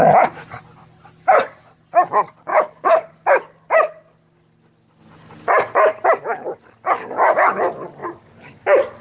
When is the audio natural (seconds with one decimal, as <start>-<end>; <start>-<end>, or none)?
0.0-2.5; 3.1-9.0

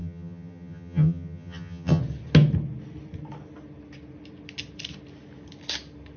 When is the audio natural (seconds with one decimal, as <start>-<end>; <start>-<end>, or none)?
2.0-6.2